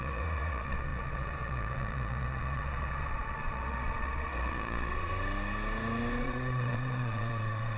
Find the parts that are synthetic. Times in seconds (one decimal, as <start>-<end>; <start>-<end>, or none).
0.0-5.1; 6.2-7.8